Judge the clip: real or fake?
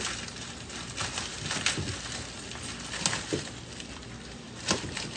real